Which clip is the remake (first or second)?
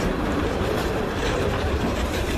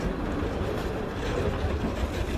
first